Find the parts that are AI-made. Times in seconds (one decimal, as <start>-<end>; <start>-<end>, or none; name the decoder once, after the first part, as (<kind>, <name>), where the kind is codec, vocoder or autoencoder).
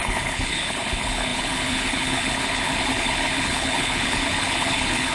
0.0-5.1 (codec, HILCodec)